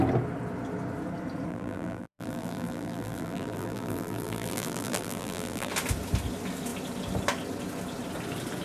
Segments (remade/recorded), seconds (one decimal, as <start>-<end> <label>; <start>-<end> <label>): 0.0-1.5 recorded; 1.5-5.7 remade; 5.7-8.6 recorded